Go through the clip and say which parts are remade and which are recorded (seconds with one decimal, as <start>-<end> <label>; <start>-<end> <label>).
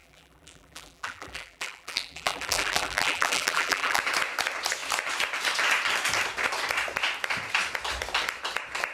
0.0-4.0 remade; 4.0-8.9 recorded